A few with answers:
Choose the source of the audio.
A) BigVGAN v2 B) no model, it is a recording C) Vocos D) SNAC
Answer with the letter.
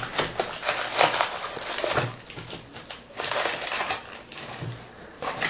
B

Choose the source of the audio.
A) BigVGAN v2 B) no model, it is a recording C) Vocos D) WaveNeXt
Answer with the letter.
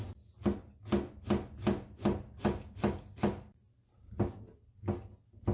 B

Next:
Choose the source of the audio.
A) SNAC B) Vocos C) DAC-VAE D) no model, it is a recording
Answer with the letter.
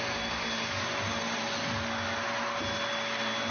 D